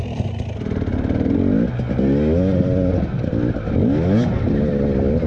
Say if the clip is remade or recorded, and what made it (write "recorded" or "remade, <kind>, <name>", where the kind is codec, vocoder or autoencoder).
recorded